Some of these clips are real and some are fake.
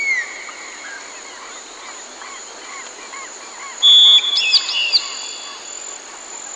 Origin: real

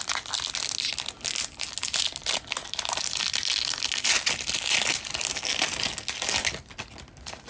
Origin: real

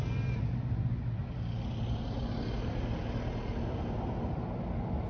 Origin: real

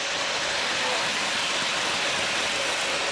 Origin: real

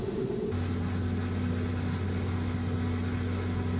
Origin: real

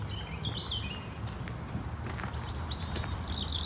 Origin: real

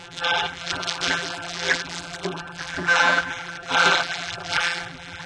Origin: fake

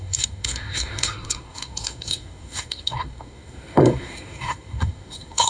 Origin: fake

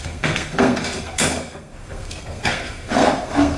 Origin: fake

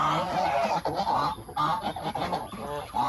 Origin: real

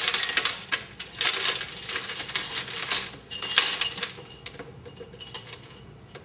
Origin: real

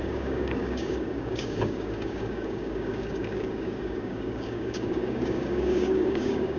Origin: fake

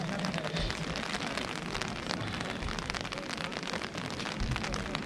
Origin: real